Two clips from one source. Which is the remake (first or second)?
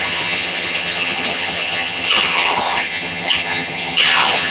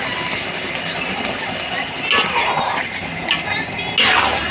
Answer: first